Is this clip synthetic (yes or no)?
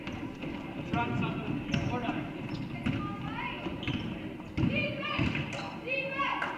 no